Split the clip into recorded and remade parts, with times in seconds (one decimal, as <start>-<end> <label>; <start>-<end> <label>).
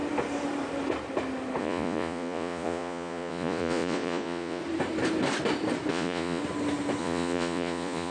0.0-1.6 recorded; 1.6-4.6 remade; 4.6-5.9 recorded; 5.9-6.4 remade; 6.4-7.0 recorded; 7.0-8.1 remade